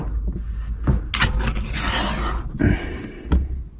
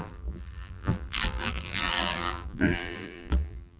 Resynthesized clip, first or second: second